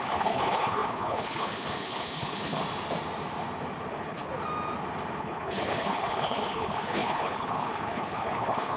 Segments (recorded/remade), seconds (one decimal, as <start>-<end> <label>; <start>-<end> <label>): 0.0-2.6 remade; 2.6-3.9 recorded; 3.9-4.3 remade; 4.3-5.2 recorded; 5.2-8.8 remade